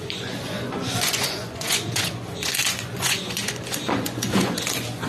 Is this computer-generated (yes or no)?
yes